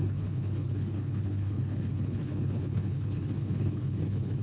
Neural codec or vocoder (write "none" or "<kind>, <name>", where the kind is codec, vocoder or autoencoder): codec, HILCodec